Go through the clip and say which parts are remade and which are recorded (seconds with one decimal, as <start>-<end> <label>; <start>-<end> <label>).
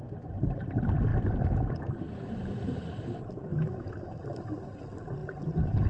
0.0-5.9 recorded